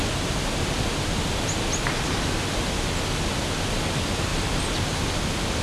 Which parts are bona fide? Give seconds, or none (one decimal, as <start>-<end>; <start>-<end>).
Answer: 0.0-5.6